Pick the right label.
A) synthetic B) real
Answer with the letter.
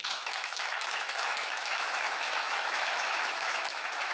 A